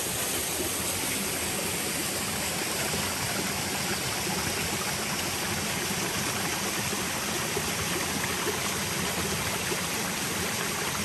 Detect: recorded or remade recorded